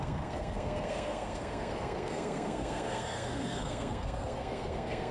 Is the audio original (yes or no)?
no